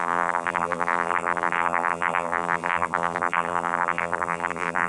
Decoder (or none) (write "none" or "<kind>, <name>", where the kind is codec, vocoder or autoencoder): vocoder, BigVGAN v2